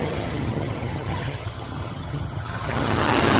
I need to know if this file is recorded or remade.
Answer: remade